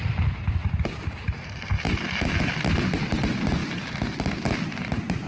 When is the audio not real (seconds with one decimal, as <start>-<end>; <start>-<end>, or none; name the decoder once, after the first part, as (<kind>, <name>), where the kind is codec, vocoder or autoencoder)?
none